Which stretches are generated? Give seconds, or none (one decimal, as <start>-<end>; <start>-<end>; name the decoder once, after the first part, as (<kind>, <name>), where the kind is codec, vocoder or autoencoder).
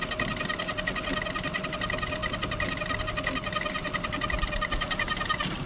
none